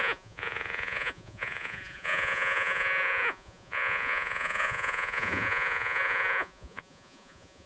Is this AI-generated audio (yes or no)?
yes